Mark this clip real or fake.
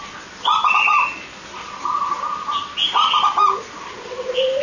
real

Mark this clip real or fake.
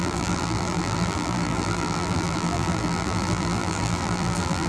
fake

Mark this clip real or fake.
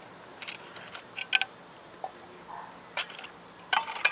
real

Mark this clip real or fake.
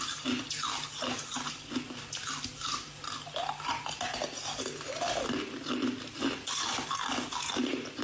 real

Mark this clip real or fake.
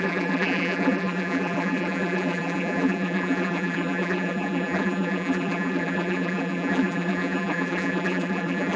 fake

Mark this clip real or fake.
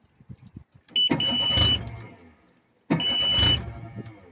real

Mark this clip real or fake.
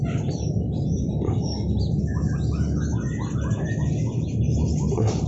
real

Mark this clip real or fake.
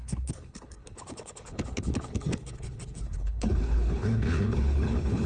fake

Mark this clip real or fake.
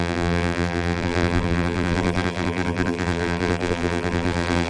fake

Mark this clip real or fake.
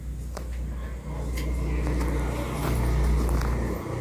real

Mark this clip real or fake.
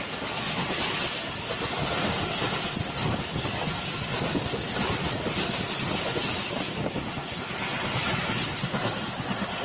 real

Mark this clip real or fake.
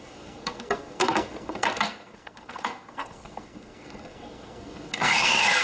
fake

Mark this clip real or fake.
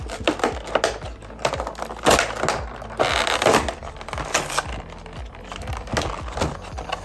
real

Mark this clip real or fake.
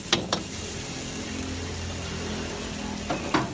real